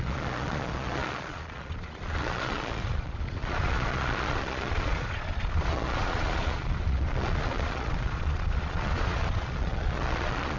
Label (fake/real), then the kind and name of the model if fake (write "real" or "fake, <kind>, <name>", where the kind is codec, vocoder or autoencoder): fake, vocoder, Vocos